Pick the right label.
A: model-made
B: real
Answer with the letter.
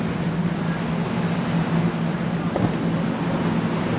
B